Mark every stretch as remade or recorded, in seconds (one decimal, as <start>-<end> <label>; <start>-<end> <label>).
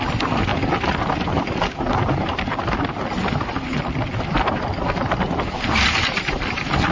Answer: 0.0-0.5 remade; 0.5-3.8 recorded; 3.8-6.9 remade